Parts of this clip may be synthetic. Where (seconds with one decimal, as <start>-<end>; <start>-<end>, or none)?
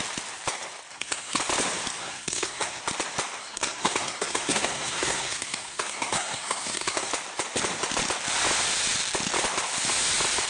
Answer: 0.9-1.4; 2.0-2.8; 3.4-7.1